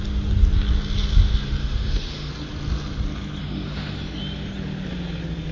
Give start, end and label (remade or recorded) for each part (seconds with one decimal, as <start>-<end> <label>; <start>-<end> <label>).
0.0-1.6 recorded; 1.6-2.3 remade; 2.3-3.4 recorded; 3.4-4.2 remade; 4.2-5.5 recorded